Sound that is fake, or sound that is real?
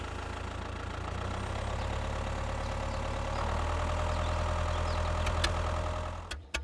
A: real